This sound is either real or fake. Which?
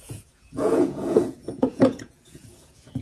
fake